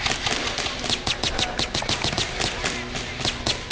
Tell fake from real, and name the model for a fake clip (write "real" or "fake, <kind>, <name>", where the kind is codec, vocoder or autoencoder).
real